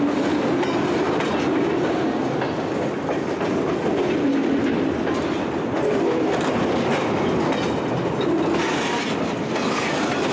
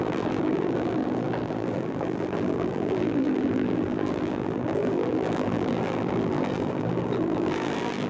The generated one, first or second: second